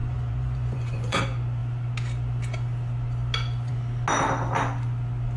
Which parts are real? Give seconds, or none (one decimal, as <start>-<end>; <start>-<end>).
1.2-5.4